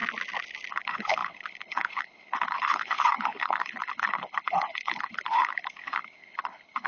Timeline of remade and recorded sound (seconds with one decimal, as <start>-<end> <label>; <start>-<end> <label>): 0.0-0.7 recorded; 0.7-6.9 remade